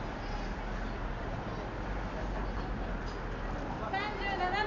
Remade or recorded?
recorded